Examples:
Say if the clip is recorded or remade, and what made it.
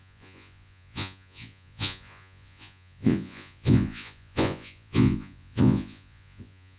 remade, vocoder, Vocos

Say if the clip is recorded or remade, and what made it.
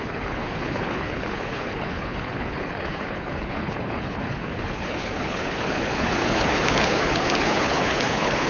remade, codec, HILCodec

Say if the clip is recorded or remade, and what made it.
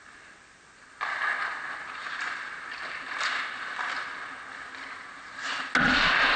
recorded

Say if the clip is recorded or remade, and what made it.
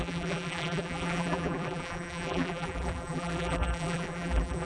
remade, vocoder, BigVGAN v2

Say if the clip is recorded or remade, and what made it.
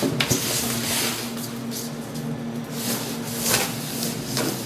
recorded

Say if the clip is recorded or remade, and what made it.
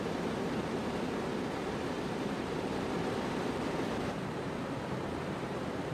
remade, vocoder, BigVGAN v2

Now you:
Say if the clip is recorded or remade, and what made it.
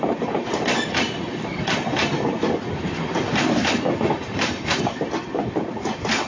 remade, vocoder, BigVGAN v2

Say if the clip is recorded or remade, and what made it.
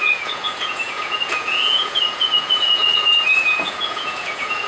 remade, vocoder, Vocos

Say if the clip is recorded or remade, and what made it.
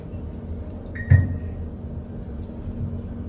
recorded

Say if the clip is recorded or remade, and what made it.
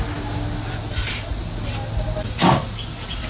recorded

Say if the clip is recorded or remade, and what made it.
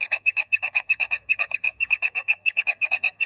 remade, codec, SNAC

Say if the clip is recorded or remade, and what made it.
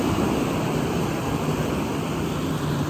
remade, vocoder, BigVGAN v2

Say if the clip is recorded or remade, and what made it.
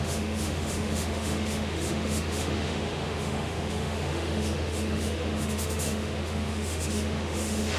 remade, autoencoder, DAC-VAE